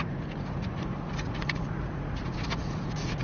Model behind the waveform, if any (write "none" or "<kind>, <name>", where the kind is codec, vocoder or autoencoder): vocoder, Vocos